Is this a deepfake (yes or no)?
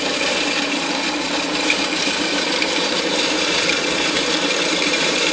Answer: yes